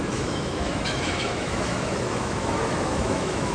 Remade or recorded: remade